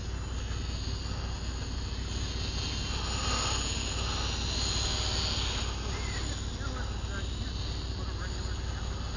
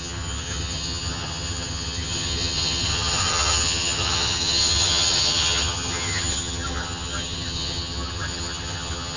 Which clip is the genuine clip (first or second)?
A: first